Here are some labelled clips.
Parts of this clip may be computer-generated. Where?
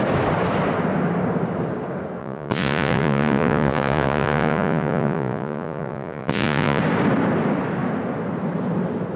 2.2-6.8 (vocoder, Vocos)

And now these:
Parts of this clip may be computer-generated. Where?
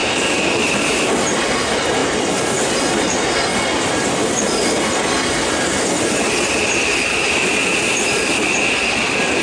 none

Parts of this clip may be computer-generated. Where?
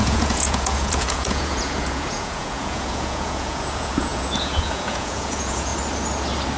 0.0-5.7 (vocoder, Vocos)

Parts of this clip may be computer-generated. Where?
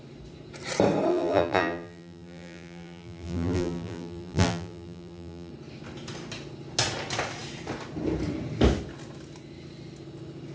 1.1-5.5 (vocoder, BigVGAN v2)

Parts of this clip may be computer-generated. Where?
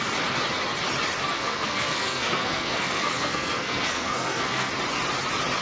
1.3-4.7 (codec, SNAC)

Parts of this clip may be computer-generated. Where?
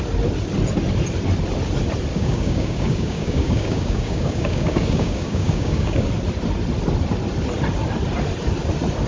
2.1-6.1 (codec, DAC)